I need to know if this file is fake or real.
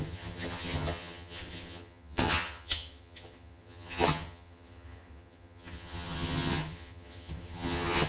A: fake